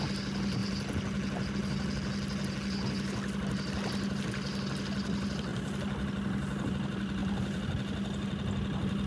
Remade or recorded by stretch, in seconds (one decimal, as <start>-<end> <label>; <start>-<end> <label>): 0.0-9.1 recorded